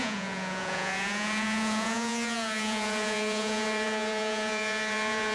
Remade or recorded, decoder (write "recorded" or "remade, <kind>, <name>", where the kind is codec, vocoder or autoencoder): remade, vocoder, Vocos